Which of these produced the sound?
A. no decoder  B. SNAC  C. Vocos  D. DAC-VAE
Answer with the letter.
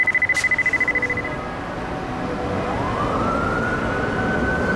A